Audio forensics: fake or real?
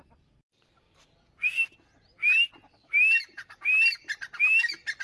real